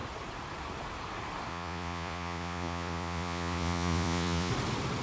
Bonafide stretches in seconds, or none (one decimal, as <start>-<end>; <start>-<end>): 0.0-1.5; 4.5-5.0